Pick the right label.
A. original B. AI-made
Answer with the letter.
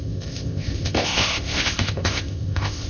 B